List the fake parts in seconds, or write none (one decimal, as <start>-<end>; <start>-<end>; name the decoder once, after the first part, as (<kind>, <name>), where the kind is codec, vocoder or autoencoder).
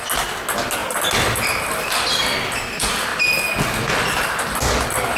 none